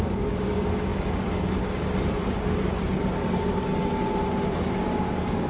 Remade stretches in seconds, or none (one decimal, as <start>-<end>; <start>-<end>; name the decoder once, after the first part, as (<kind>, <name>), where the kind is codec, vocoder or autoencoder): 0.0-5.5 (codec, DAC)